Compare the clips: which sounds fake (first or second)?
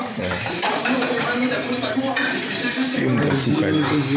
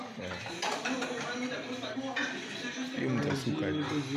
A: first